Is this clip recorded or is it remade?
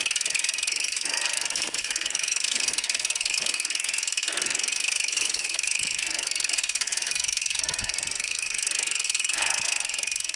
remade